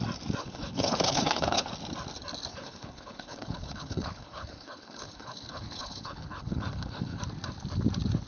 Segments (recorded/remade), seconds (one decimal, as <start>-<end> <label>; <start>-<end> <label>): 0.0-0.4 recorded; 0.4-1.7 remade; 1.7-2.5 recorded; 2.5-7.2 remade; 7.2-8.3 recorded